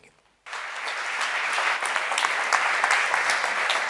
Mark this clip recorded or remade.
recorded